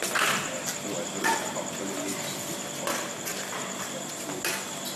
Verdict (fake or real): real